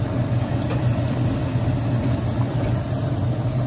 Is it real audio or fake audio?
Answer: real